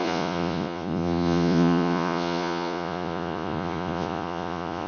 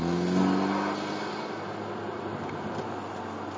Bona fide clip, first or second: second